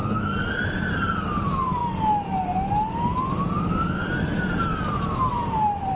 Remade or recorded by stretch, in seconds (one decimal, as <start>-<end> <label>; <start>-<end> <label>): 0.0-1.8 remade; 1.8-3.7 recorded; 3.7-6.0 remade